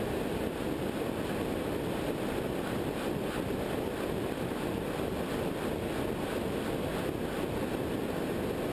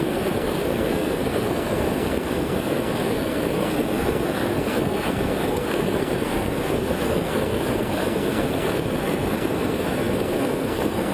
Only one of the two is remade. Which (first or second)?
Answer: second